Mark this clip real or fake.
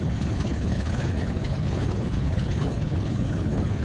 fake